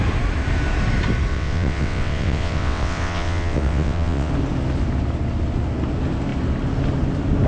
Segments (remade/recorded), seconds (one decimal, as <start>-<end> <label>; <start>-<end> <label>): 0.0-1.3 recorded; 1.3-4.3 remade; 4.3-7.5 recorded